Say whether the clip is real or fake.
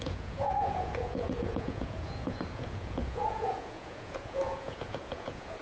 fake